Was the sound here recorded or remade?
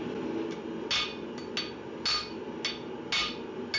recorded